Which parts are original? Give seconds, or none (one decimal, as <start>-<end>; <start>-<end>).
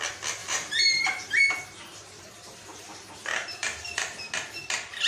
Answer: 0.0-0.4; 1.4-1.9; 4.3-5.1